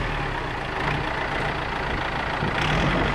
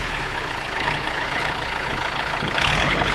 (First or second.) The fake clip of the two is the second